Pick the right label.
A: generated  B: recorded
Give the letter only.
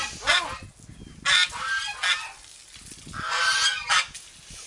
B